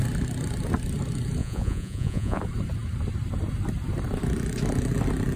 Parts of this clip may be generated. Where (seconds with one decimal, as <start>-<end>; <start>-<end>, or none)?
1.4-2.4